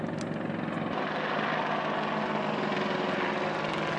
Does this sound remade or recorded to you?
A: recorded